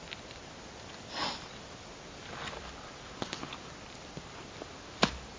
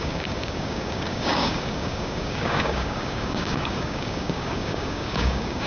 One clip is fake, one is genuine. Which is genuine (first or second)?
first